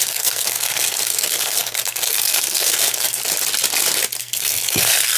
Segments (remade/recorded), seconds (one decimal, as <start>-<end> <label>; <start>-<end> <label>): 0.0-3.2 remade; 3.2-4.2 recorded; 4.2-5.2 remade